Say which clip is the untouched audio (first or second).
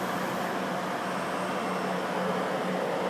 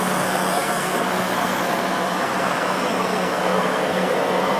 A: first